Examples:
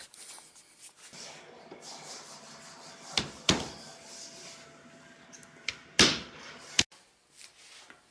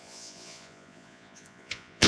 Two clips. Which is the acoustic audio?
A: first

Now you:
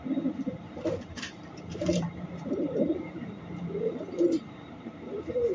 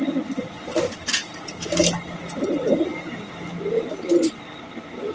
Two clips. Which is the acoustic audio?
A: second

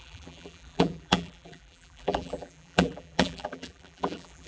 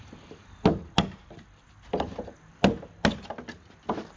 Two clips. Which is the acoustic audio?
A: second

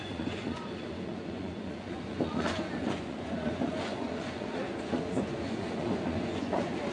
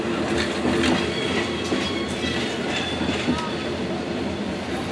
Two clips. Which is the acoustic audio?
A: second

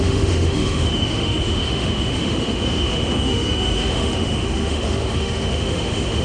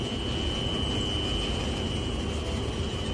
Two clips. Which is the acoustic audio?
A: second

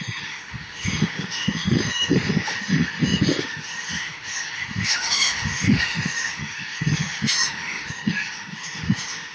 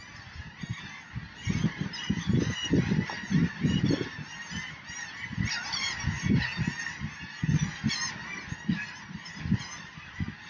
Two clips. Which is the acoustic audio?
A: second